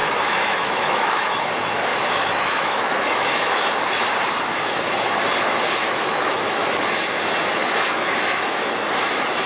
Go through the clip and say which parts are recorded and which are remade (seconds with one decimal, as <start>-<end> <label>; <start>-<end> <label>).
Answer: 0.0-1.4 remade; 1.4-1.9 recorded; 1.9-3.7 remade; 3.7-5.8 recorded; 5.8-6.8 remade; 6.8-7.6 recorded; 7.6-8.9 remade; 8.9-9.5 recorded